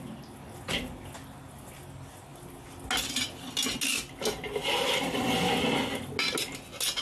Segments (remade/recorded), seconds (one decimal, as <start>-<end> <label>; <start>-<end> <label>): 0.0-4.6 recorded; 4.6-5.4 remade; 5.4-7.0 recorded